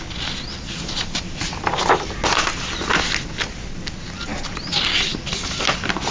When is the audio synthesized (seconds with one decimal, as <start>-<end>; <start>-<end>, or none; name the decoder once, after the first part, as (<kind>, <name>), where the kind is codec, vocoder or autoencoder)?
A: none